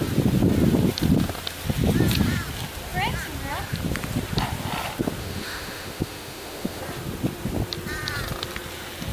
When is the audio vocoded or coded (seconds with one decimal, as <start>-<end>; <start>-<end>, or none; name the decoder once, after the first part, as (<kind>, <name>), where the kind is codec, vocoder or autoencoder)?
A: 5.2-6.8 (autoencoder, DAC-VAE)